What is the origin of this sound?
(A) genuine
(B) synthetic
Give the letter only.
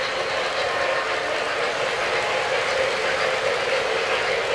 A